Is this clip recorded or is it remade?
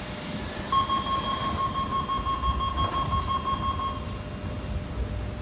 recorded